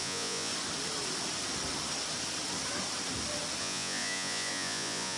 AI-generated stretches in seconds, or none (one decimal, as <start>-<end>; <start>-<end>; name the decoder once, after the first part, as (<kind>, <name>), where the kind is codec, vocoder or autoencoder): 0.0-0.5 (vocoder, Vocos); 3.6-5.2

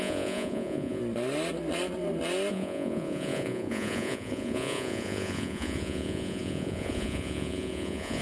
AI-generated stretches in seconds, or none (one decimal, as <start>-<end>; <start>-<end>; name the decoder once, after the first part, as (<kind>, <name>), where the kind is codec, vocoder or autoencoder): 0.0-1.0 (vocoder, Vocos); 2.5-8.2

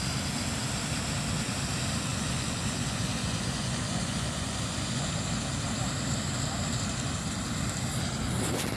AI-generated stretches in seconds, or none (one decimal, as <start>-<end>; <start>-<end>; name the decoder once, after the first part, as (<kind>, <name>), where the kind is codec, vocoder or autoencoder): 2.1-5.1 (vocoder, Vocos)

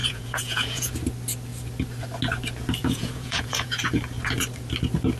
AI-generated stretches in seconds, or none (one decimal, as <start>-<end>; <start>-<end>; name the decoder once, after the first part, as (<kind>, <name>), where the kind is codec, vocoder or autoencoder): 0.0-0.9 (vocoder, Vocos); 2.8-3.8

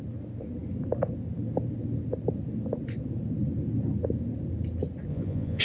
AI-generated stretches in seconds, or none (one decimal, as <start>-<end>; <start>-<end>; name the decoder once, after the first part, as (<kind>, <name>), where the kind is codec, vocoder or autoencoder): 5.1-5.6 (vocoder, Vocos)

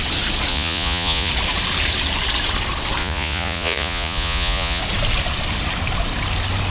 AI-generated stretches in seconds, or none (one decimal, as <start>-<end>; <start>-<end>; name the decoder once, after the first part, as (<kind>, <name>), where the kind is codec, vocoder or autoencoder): 0.5-1.3 (vocoder, Vocos); 3.0-4.8